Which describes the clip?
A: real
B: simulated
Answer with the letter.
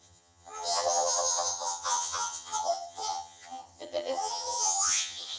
B